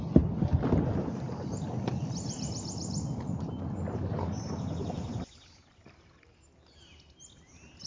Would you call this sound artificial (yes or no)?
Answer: no